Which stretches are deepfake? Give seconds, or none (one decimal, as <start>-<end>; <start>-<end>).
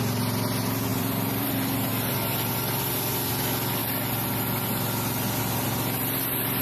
0.9-1.9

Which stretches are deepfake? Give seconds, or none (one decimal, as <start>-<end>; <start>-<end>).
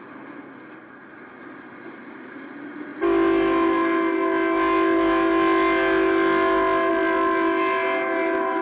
none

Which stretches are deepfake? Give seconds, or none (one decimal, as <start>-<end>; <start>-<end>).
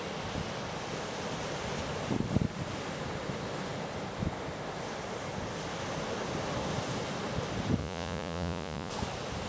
7.8-8.9